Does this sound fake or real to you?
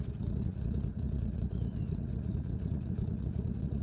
fake